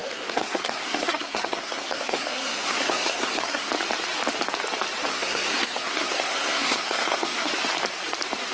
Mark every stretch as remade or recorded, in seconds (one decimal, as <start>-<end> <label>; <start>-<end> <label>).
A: 0.0-3.7 remade; 3.7-5.1 recorded; 5.1-7.5 remade; 7.5-8.5 recorded